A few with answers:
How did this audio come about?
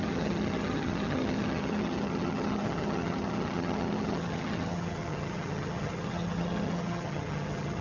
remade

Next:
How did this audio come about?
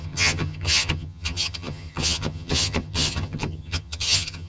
remade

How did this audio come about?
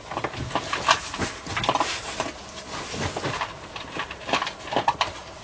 recorded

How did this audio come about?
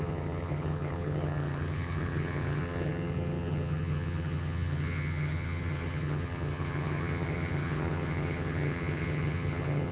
remade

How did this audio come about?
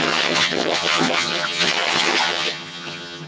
remade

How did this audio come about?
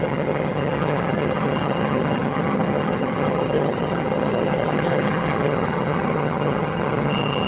remade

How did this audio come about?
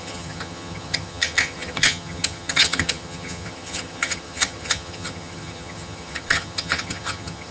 remade